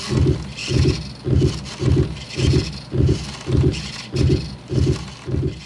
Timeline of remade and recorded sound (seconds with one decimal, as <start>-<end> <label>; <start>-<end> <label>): 0.0-5.7 recorded

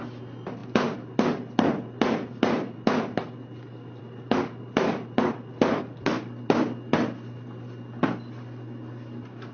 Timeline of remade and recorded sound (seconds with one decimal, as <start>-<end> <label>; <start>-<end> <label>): 0.0-9.5 recorded

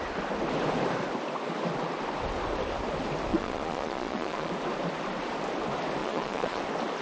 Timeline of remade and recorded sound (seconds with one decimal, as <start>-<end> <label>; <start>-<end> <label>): 0.0-3.3 recorded; 3.3-4.5 remade; 4.5-6.0 recorded; 6.0-6.6 remade; 6.6-7.0 recorded

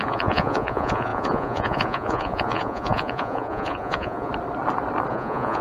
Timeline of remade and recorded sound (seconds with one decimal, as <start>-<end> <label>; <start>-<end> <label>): 0.0-4.3 remade; 4.3-5.1 recorded; 5.1-5.6 remade

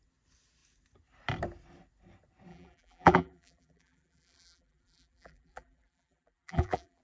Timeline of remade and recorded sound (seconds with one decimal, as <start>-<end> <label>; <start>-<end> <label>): 0.0-2.5 recorded; 2.5-7.0 remade

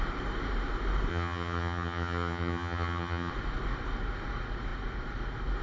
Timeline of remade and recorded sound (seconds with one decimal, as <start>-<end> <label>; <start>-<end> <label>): 0.0-1.1 recorded; 1.1-3.3 remade; 3.3-5.6 recorded